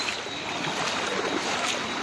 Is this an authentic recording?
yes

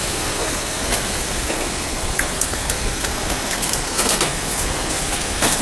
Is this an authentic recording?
no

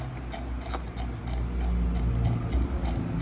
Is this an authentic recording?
yes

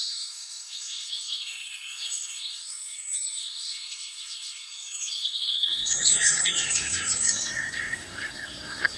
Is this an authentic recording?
no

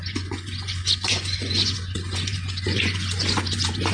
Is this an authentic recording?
no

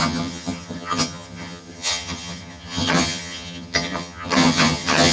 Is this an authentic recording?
no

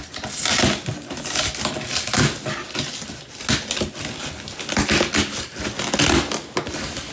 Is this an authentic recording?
yes